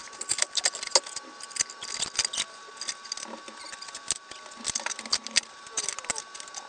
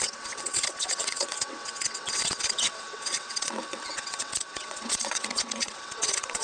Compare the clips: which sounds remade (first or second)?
second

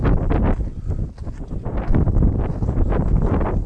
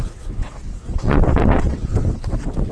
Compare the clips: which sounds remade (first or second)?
second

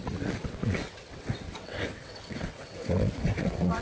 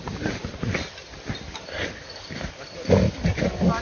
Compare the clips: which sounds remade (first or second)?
first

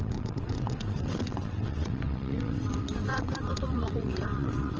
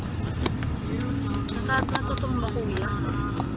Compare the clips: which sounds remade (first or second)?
first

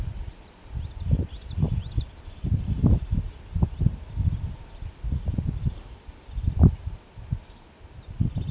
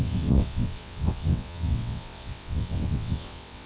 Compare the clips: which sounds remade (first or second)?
second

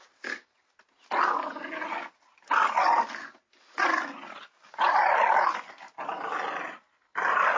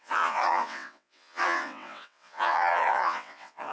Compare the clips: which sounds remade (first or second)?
second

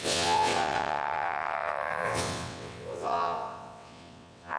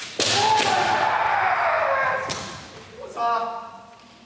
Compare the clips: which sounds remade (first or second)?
first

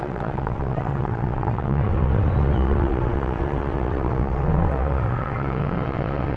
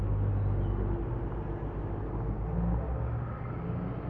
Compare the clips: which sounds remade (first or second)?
first